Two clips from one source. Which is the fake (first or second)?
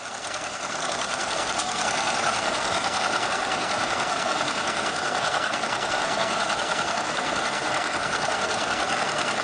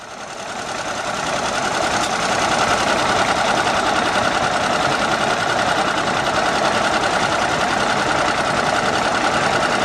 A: first